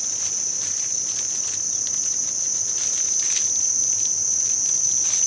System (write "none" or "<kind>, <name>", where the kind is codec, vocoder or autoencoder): none